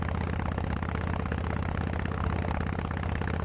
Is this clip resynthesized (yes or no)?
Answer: no